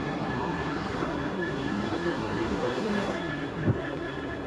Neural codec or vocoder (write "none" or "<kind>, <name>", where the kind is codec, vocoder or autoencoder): codec, SNAC